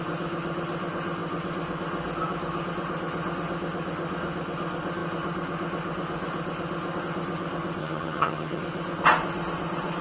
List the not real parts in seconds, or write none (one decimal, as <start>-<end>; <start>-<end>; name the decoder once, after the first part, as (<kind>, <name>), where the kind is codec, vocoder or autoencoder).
7.8-8.6 (vocoder, HiFi-GAN)